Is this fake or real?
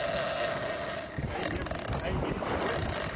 real